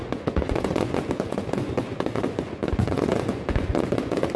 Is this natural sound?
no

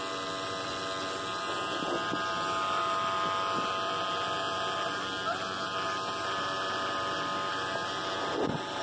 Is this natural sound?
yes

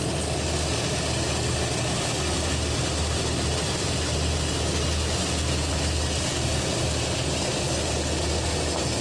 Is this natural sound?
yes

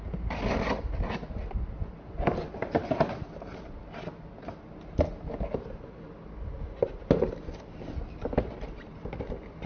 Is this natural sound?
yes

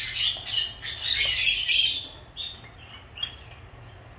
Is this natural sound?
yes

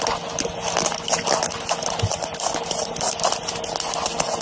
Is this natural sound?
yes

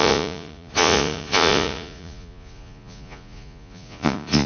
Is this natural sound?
no